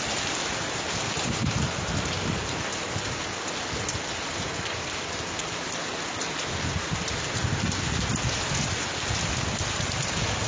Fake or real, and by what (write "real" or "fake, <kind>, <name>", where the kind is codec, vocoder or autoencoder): real